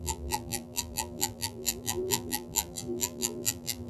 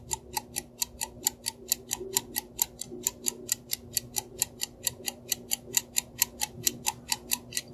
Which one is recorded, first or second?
second